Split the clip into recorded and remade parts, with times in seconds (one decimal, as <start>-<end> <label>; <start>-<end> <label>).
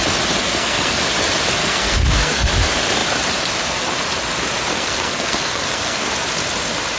0.0-0.4 recorded; 0.4-1.0 remade; 1.0-1.6 recorded; 1.6-2.5 remade; 2.5-4.7 recorded; 4.7-6.1 remade; 6.1-7.0 recorded